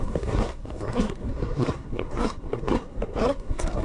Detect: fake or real fake